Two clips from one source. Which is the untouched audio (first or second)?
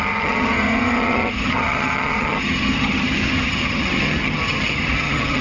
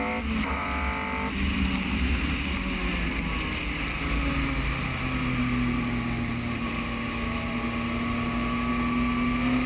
second